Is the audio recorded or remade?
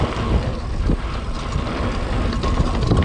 recorded